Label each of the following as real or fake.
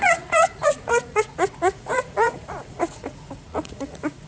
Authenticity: fake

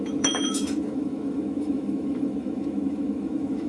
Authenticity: fake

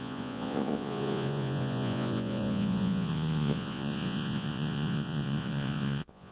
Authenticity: fake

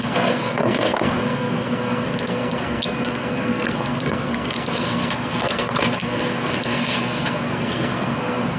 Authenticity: fake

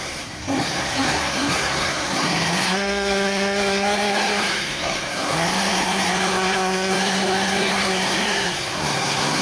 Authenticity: fake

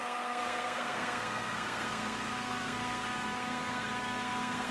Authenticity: fake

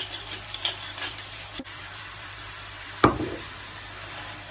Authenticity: fake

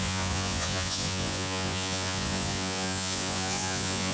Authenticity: fake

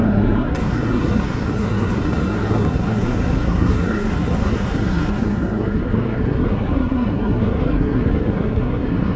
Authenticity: fake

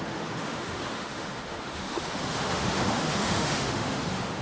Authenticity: fake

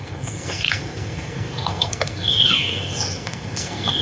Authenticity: fake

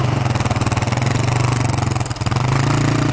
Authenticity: real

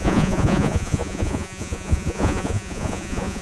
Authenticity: fake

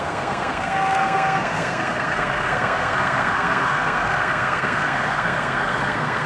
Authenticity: fake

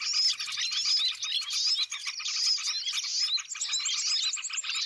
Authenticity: real